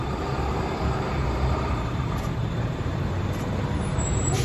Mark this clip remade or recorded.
remade